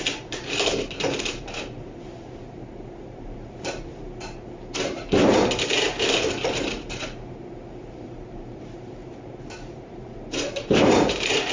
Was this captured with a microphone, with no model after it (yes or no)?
no